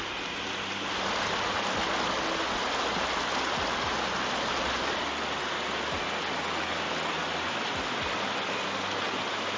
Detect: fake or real real